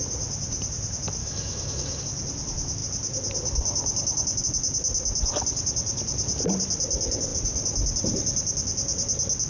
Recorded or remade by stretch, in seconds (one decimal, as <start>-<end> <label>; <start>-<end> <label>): 0.0-1.2 recorded; 1.2-2.0 remade; 2.0-9.5 recorded